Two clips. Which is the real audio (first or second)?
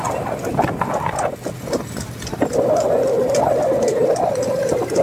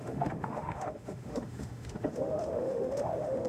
first